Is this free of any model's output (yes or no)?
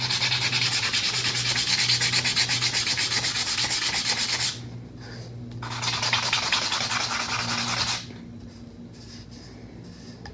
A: yes